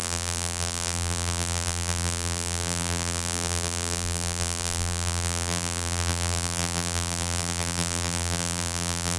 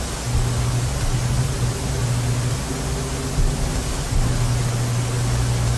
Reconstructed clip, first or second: first